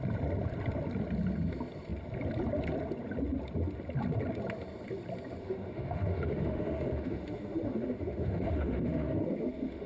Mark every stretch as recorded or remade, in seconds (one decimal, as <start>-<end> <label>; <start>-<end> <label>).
0.0-5.4 recorded; 5.4-9.9 remade